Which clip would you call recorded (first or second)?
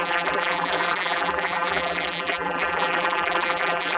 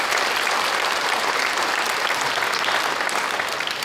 second